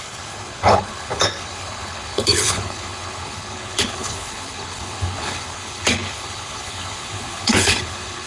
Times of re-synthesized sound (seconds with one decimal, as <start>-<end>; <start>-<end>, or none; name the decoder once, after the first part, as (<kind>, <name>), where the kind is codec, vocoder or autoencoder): 0.0-8.3 (codec, HILCodec)